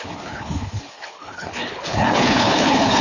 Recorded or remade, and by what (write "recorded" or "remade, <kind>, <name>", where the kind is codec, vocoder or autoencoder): remade, codec, HILCodec